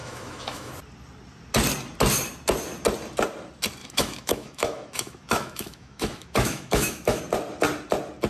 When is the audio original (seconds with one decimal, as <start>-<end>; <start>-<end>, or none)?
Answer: 0.7-3.8; 7.2-8.3

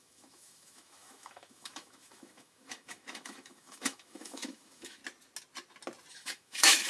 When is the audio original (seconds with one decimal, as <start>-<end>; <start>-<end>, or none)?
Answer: 5.0-6.1

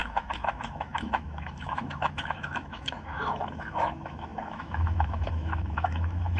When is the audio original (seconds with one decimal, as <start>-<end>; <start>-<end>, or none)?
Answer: none

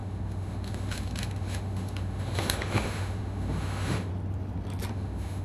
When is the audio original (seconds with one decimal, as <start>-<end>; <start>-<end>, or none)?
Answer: 4.1-4.9

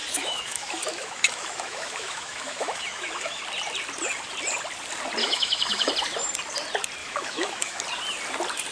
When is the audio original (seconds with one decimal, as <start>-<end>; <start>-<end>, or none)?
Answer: 3.4-5.2; 5.9-7.0; 7.8-8.7

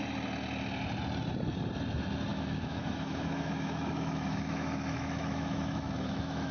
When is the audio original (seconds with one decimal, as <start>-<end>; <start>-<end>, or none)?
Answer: 0.0-2.3